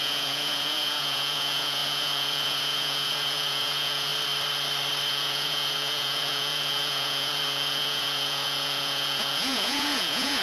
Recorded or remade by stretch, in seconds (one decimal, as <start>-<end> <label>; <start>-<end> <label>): 0.0-4.1 remade; 4.1-5.1 recorded; 5.1-10.4 remade